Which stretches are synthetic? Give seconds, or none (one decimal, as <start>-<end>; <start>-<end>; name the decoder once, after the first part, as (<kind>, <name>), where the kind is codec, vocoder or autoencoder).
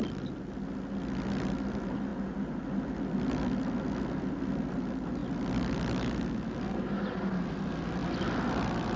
none